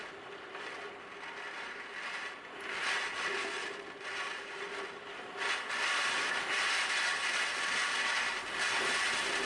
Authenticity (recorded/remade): recorded